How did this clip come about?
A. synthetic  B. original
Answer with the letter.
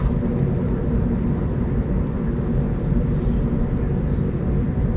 B